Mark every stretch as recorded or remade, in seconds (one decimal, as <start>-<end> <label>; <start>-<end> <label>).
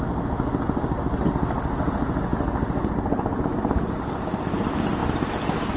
0.0-5.8 recorded